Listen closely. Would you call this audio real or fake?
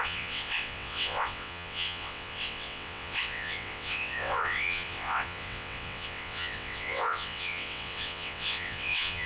fake